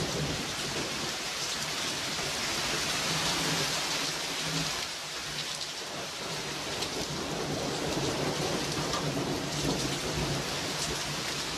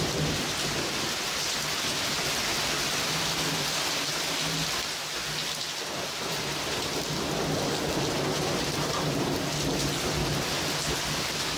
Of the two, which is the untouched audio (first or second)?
second